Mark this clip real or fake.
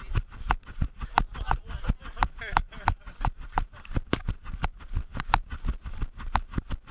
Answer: real